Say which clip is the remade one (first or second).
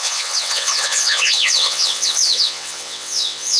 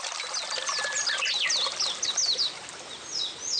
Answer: first